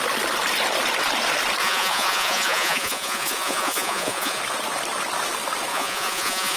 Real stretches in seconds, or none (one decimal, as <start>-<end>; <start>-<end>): 0.0-1.6; 4.4-5.7